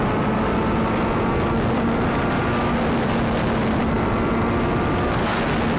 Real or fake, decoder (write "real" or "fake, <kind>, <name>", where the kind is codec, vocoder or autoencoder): real